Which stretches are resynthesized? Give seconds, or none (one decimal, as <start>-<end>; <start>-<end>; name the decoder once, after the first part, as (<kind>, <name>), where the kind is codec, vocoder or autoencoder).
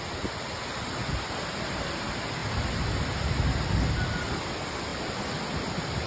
none